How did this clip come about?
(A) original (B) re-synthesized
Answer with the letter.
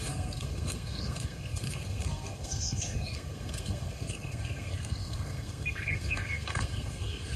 B